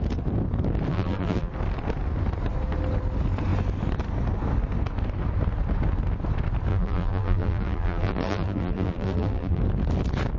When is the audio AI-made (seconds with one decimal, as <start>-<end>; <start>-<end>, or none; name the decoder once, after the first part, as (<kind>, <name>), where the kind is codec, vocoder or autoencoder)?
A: 0.9-1.5 (vocoder, BigVGAN v2); 6.7-9.6